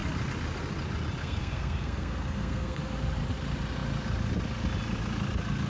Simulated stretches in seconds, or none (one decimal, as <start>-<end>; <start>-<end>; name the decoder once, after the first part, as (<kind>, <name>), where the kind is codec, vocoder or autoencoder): 1.2-2.8 (codec, SNAC)

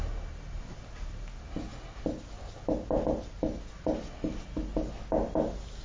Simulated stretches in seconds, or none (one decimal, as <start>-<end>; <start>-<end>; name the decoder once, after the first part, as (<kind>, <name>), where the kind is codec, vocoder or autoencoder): none

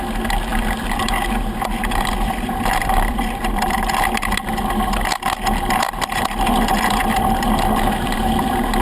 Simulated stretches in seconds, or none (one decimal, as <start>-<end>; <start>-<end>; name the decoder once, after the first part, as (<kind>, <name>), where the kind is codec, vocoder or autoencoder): 0.5-3.9 (vocoder, BigVGAN v2)